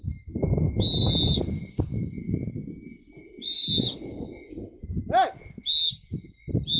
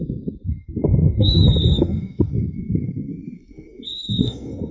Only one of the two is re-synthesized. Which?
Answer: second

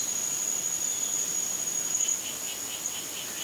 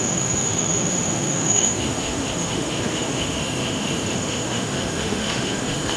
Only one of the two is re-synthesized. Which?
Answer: second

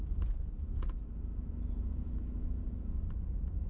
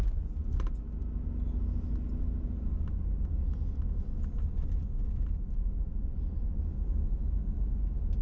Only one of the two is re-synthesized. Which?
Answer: first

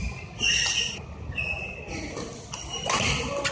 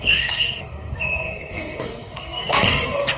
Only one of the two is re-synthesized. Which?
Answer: second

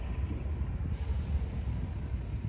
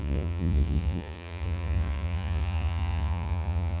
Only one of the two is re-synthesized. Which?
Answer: second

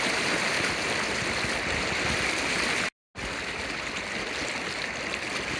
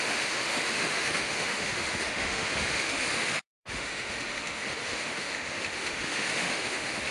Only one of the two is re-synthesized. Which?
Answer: second